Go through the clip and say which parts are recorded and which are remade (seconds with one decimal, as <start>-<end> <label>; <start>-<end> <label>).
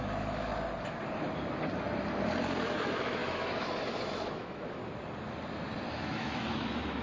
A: 0.0-0.5 remade; 0.5-2.6 recorded; 2.6-4.8 remade; 4.8-5.9 recorded; 5.9-7.0 remade